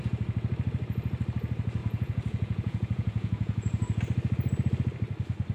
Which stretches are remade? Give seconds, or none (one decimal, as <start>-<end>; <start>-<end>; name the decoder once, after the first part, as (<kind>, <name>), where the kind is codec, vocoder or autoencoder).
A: 1.8-4.0 (vocoder, Vocos)